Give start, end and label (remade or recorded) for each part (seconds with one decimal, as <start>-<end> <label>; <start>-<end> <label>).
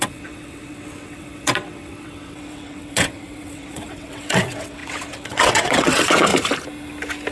0.0-6.3 remade; 6.3-7.3 recorded